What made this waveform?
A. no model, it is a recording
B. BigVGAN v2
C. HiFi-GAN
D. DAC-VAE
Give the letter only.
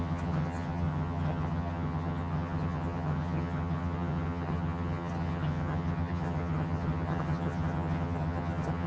C